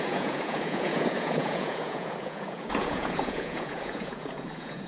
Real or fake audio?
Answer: fake